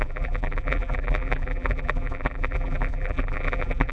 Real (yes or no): no